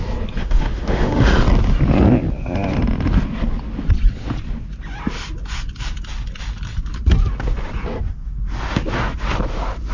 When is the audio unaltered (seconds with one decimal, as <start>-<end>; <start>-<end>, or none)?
0.0-0.4; 1.3-9.9